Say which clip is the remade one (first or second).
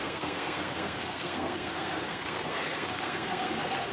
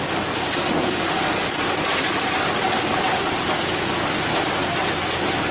first